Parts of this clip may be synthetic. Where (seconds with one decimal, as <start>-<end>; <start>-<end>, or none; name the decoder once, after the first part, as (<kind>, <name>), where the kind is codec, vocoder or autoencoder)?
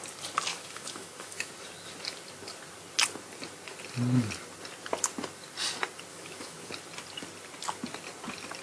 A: 0.5-1.5 (autoencoder, DAC-VAE); 6.1-6.7